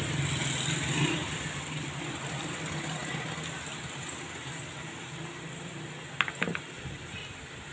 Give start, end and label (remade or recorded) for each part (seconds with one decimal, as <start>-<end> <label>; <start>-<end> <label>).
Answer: 0.0-7.7 recorded